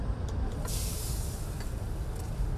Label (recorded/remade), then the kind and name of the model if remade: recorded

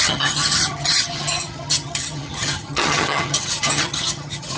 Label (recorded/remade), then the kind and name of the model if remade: remade, vocoder, HiFi-GAN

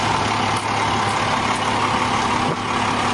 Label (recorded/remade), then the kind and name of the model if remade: recorded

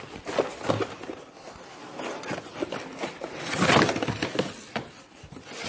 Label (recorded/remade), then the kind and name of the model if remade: recorded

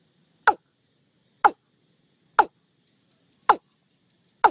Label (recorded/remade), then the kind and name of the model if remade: recorded